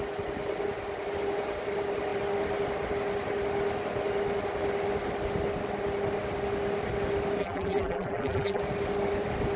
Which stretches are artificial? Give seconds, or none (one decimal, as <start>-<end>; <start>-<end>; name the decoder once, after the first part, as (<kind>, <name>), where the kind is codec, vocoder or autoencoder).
7.4-8.6 (vocoder, BigVGAN v2)

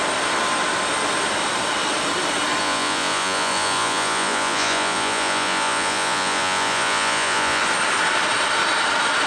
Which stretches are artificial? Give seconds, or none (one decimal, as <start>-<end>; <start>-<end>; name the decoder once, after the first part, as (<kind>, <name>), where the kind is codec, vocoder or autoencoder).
2.6-7.6 (vocoder, Vocos)

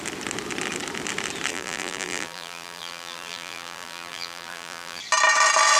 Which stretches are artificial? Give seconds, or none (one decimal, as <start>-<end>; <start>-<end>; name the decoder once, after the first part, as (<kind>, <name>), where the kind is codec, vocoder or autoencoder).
1.5-5.0 (vocoder, BigVGAN v2)

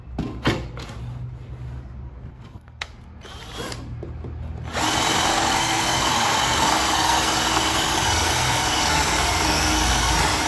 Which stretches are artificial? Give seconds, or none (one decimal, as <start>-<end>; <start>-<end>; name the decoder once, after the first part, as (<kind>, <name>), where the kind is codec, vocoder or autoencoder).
2.3-2.9 (codec, SNAC); 5.3-10.1

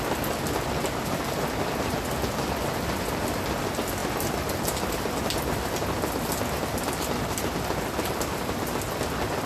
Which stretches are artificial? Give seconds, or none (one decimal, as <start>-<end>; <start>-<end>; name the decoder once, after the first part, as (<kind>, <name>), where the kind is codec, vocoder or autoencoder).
none

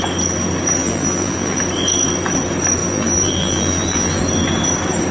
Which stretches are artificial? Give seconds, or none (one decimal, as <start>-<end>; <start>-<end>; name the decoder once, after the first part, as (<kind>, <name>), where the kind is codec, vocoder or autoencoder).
0.8-1.6 (vocoder, BigVGAN v2); 2.8-4.2